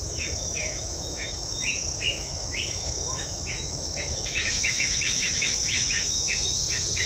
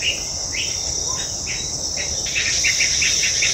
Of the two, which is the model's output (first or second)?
first